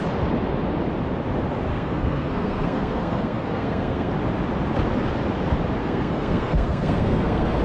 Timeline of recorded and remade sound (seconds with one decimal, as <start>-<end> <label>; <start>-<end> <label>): 0.0-1.7 recorded; 1.7-4.1 remade; 4.1-5.8 recorded; 5.8-7.6 remade